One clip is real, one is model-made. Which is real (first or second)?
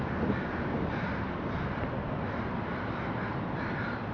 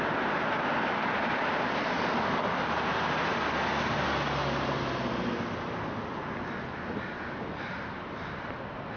second